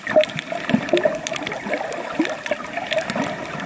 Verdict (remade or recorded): recorded